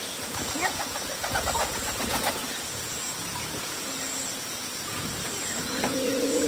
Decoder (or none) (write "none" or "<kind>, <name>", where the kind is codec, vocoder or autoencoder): vocoder, Vocos